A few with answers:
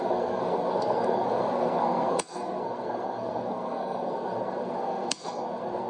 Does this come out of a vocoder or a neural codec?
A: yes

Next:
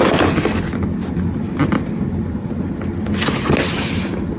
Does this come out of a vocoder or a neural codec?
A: no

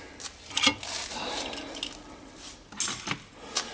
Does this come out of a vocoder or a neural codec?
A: no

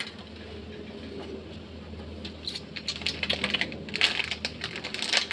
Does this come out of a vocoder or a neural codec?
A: no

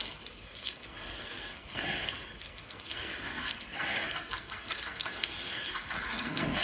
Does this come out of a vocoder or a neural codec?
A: yes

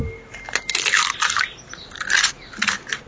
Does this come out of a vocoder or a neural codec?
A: no